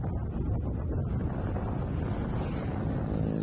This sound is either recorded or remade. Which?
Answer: recorded